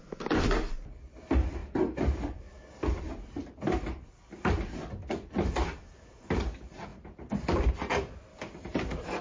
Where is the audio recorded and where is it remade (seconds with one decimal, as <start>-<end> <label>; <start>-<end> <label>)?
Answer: 0.0-9.2 recorded